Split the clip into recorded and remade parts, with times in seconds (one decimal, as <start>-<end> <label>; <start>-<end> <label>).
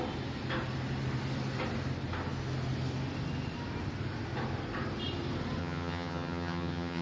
0.0-5.6 recorded; 5.6-7.0 remade